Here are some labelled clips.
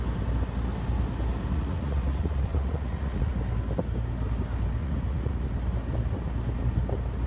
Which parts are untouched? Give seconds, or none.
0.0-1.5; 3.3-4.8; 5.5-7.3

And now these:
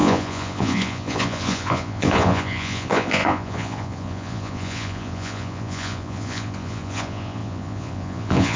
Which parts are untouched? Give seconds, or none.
none

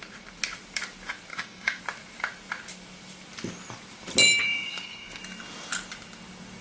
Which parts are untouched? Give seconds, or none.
0.0-1.3; 1.8-4.4; 5.2-6.6

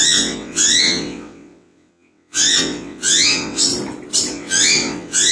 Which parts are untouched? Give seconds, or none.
3.7-4.3

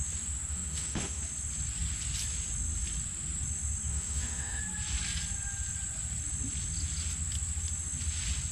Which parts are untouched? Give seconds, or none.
0.0-0.5; 1.2-3.9; 4.6-8.5

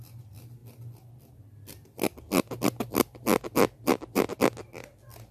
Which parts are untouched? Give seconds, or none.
0.0-5.3

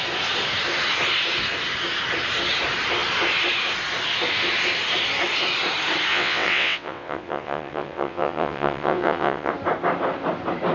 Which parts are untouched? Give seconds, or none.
0.0-6.1; 9.5-10.7

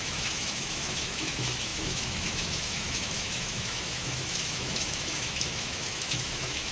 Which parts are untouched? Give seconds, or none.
none